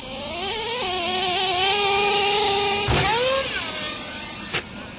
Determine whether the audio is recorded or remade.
recorded